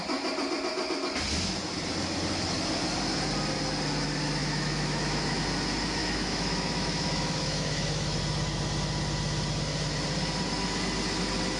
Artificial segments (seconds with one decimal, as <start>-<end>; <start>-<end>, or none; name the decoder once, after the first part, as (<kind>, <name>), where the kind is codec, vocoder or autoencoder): 4.4-5.4 (autoencoder, DAC-VAE); 6.0-8.2